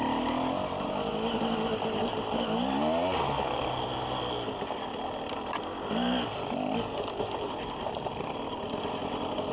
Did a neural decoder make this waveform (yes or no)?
no